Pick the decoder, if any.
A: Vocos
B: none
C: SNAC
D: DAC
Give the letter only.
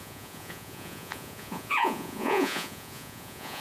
A